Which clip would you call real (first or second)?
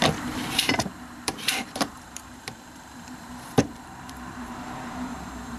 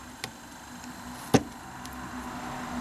second